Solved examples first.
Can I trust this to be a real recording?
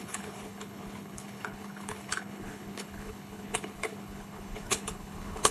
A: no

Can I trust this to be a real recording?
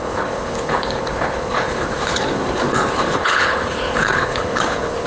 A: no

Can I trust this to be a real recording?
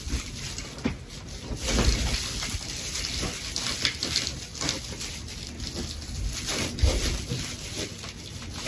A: yes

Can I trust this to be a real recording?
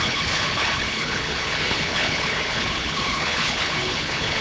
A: no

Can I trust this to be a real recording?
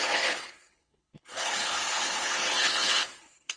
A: no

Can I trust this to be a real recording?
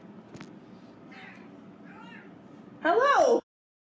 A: yes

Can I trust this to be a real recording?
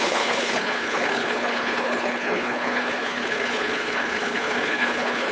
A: no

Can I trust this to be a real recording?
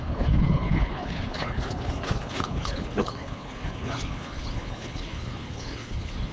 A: no